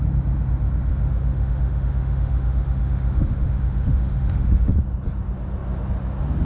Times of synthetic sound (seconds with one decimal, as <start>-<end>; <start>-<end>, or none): 0.9-4.7